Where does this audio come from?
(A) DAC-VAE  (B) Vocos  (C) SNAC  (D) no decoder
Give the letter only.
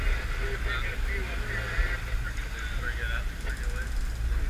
D